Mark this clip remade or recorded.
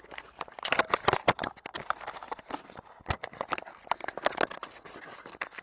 recorded